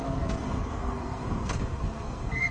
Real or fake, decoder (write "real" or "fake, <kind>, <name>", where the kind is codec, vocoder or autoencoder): fake, codec, SNAC